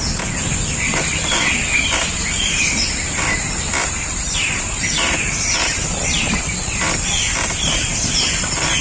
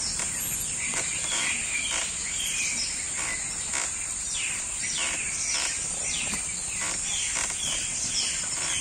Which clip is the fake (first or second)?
first